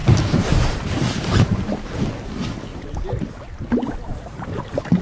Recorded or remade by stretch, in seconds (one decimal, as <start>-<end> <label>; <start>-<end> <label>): 0.0-1.5 remade; 1.5-2.7 recorded; 2.7-3.3 remade; 3.3-4.1 recorded; 4.1-4.6 remade; 4.6-5.0 recorded